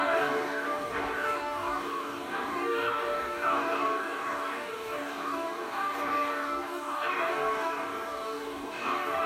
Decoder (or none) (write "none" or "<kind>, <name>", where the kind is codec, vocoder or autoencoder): codec, DAC